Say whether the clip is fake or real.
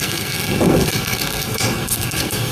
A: fake